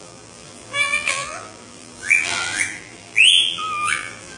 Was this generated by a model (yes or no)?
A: yes